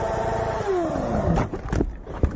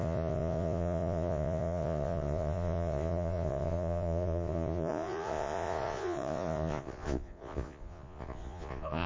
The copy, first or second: second